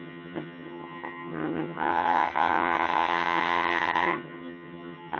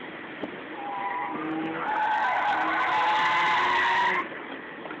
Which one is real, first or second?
second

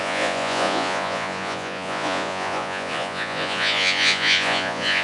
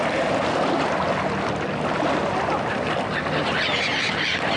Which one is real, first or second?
second